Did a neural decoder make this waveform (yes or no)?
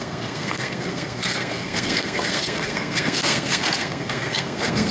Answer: yes